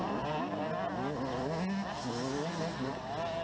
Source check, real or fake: real